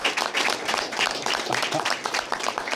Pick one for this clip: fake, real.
fake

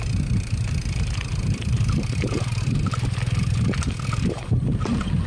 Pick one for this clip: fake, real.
real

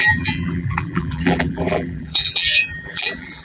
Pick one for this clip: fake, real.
fake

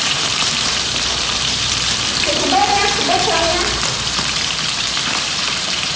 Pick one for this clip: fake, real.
fake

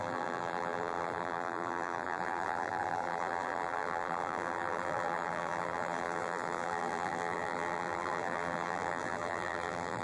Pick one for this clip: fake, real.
fake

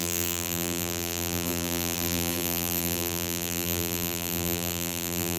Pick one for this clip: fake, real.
fake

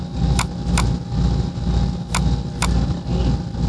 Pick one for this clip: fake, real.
real